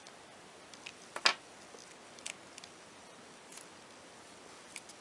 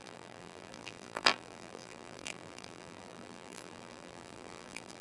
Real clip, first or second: first